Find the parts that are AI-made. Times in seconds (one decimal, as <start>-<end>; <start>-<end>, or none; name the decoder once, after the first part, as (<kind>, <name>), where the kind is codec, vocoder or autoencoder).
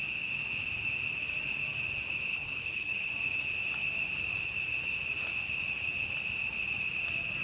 2.3-3.1 (codec, HILCodec)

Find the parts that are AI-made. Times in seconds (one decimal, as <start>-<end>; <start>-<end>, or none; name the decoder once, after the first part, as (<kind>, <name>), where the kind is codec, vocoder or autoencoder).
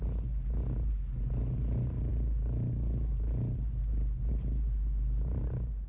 none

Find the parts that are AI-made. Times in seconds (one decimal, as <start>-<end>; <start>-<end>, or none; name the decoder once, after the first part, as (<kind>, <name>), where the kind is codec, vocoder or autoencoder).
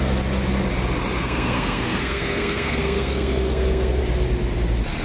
1.2-4.0 (codec, SNAC)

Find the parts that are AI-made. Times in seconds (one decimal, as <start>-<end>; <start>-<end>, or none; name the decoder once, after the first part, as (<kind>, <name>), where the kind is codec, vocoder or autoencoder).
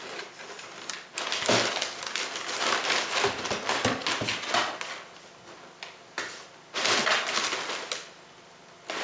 none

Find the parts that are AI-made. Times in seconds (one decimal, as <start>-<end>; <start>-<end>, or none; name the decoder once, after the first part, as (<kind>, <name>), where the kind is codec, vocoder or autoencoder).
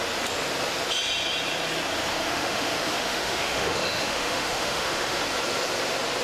2.1-5.2 (autoencoder, DAC-VAE)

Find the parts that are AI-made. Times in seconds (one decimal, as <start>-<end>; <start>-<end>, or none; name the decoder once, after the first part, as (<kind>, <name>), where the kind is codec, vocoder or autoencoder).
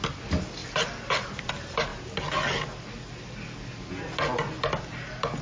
none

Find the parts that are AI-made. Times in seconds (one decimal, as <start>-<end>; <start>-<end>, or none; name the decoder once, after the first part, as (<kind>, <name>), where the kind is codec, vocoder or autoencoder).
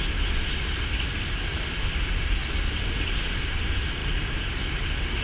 none